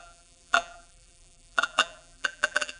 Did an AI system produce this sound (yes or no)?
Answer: yes